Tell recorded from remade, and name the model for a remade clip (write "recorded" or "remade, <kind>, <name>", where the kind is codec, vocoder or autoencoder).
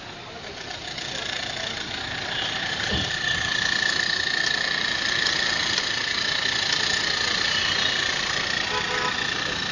recorded